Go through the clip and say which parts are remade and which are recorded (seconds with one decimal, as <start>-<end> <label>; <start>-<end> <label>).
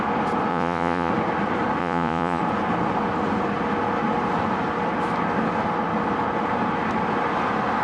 0.0-0.5 recorded; 0.5-1.1 remade; 1.1-1.8 recorded; 1.8-2.4 remade; 2.4-7.8 recorded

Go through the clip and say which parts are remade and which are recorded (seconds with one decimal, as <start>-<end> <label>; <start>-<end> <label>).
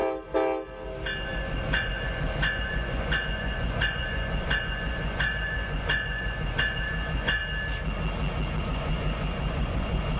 0.0-1.2 recorded; 1.2-7.4 remade; 7.4-8.6 recorded; 8.6-10.2 remade